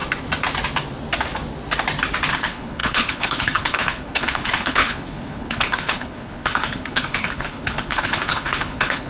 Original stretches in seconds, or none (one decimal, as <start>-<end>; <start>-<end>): 0.0-2.3